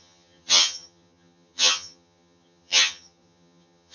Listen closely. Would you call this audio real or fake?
fake